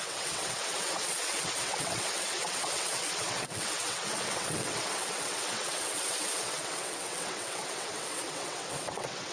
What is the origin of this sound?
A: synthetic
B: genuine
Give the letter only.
A